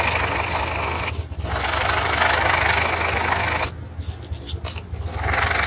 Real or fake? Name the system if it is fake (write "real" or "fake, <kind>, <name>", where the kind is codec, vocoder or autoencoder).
real